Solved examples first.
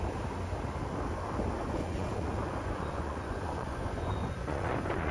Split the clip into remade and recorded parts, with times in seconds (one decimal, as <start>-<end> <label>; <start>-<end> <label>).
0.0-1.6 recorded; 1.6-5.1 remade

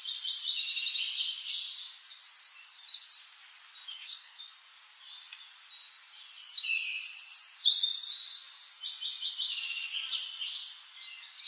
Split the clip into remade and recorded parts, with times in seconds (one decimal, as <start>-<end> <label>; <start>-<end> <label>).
0.0-3.9 recorded; 3.9-4.4 remade; 4.4-11.5 recorded

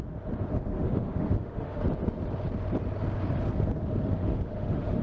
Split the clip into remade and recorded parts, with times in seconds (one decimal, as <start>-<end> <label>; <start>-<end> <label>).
0.0-0.5 recorded; 0.5-1.8 remade; 1.8-4.2 recorded; 4.2-5.0 remade

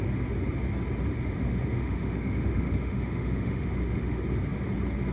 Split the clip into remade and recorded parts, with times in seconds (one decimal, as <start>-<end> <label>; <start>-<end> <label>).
0.0-1.1 recorded; 1.1-4.2 remade; 4.2-5.1 recorded

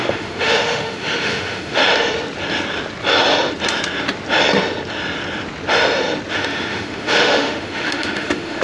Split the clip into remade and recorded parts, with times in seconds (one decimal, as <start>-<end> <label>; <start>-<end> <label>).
0.0-1.8 remade; 1.8-6.3 recorded; 6.3-8.6 remade